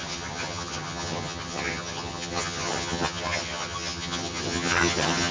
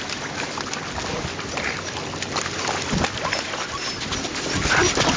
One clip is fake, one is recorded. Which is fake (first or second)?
first